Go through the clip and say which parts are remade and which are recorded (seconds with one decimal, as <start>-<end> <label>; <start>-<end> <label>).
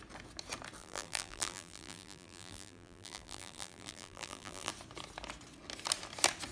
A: 0.0-0.8 recorded; 0.8-4.7 remade; 4.7-6.5 recorded